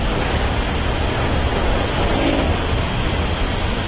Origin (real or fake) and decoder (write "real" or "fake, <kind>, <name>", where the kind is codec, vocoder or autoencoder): real